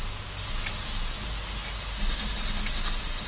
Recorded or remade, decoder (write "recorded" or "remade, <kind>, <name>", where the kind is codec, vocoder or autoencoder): recorded